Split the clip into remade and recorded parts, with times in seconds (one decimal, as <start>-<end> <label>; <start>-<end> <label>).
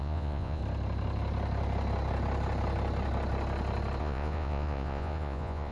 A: 0.0-0.6 remade; 0.6-4.0 recorded; 4.0-5.7 remade